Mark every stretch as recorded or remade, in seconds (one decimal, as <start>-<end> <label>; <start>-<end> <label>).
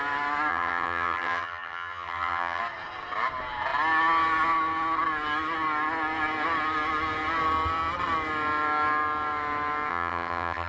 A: 0.0-0.5 recorded; 0.5-2.6 remade; 2.6-9.9 recorded; 9.9-10.7 remade